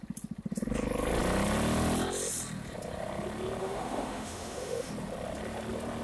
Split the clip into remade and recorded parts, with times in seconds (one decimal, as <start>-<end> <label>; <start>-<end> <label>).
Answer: 0.0-3.6 recorded; 3.6-4.9 remade; 4.9-6.0 recorded